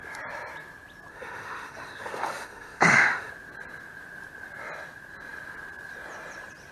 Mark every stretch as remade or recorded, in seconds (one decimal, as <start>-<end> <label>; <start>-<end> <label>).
0.0-1.1 recorded; 1.1-3.3 remade; 3.3-6.7 recorded